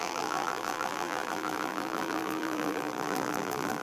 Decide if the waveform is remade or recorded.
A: remade